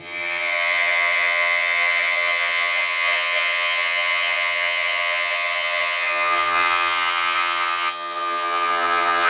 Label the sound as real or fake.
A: fake